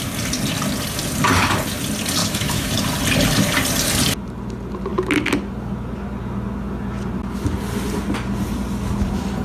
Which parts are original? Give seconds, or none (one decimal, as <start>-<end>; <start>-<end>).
0.0-2.2; 2.7-9.4